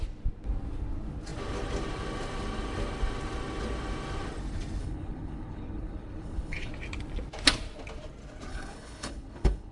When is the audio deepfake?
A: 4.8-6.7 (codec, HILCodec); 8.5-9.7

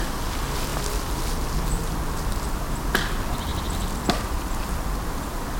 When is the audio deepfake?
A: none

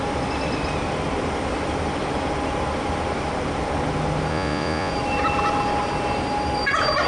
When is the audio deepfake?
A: 4.3-4.9 (vocoder, Vocos)

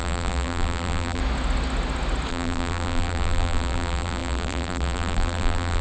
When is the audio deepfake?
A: 0.0-1.2 (vocoder, BigVGAN v2); 2.3-5.8

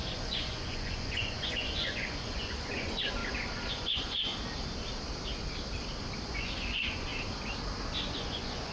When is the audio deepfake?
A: 0.0-3.2 (vocoder, Vocos); 3.7-4.3; 6.2-7.1; 8.1-8.7